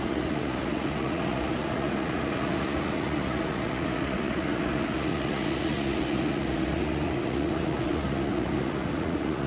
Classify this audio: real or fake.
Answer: fake